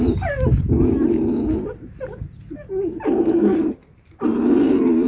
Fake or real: real